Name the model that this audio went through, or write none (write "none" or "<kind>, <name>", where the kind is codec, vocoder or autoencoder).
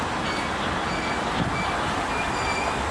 none